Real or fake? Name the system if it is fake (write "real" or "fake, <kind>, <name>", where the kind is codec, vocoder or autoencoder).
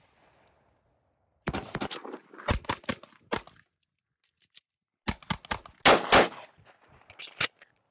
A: real